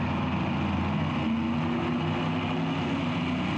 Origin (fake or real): real